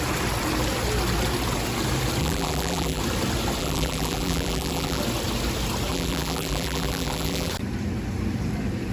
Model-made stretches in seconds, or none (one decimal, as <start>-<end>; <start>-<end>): 2.2-3.0; 3.6-5.0; 5.9-7.5